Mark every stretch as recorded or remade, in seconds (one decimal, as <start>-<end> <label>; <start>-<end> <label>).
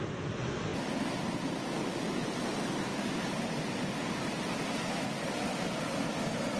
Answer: 0.0-6.6 recorded